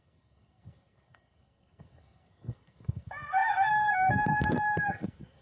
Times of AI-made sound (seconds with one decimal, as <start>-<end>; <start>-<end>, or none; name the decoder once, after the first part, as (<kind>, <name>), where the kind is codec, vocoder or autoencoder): 0.0-5.4 (codec, SNAC)